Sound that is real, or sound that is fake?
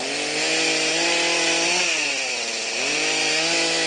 real